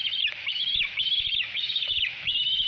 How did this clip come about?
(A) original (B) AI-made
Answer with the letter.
B